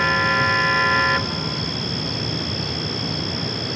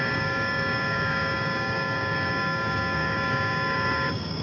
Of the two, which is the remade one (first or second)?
second